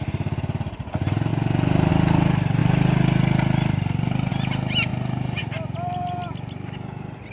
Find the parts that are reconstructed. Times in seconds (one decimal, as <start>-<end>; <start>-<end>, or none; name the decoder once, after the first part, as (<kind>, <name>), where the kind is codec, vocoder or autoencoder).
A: none